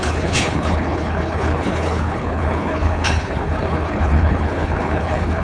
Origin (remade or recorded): remade